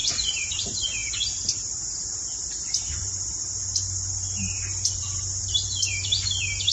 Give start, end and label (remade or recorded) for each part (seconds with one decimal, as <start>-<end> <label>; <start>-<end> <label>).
0.0-0.6 remade; 0.6-6.7 recorded